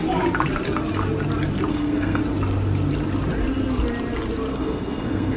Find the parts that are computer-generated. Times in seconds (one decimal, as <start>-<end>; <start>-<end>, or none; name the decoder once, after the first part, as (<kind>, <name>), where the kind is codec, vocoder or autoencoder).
1.7-2.2 (codec, SNAC); 4.5-5.4